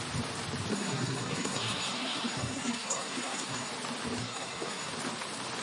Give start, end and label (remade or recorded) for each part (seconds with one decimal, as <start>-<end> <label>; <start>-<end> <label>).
0.0-0.7 recorded; 0.7-3.7 remade; 3.7-4.2 recorded; 4.2-4.9 remade; 4.9-5.6 recorded